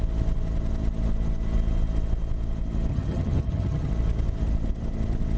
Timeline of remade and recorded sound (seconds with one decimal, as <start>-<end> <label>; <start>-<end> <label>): 0.0-2.9 recorded; 2.9-3.9 remade; 3.9-5.4 recorded